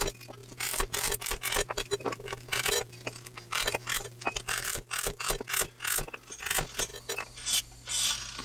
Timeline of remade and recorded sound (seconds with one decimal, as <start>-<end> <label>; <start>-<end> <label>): 0.0-0.4 recorded; 0.4-5.3 remade; 5.3-8.4 recorded